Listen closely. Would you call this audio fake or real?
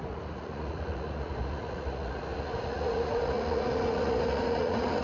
fake